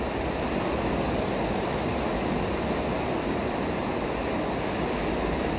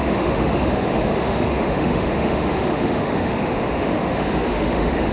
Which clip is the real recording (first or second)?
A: first